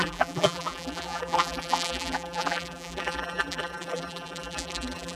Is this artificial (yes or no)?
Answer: yes